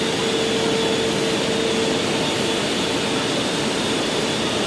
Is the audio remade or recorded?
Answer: recorded